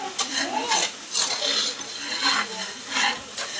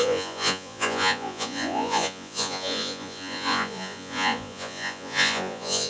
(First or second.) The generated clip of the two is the second